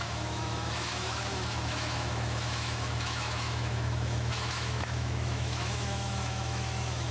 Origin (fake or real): fake